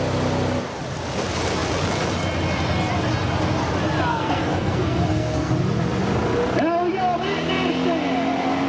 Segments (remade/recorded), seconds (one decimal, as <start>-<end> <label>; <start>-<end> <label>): 0.0-4.1 recorded; 4.1-5.5 remade; 5.5-8.7 recorded